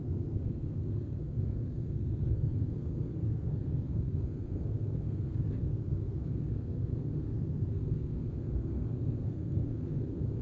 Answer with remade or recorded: remade